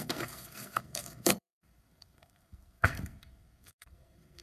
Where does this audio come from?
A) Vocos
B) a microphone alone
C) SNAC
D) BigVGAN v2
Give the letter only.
C